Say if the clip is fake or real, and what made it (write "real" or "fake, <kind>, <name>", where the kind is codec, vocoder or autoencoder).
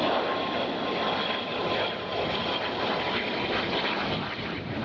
real